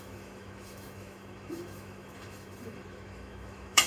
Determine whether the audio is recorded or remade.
remade